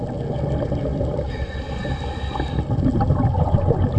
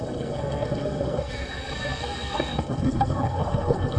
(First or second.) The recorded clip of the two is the first